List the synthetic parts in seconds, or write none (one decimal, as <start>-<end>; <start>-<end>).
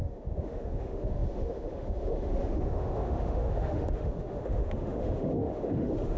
0.0-6.2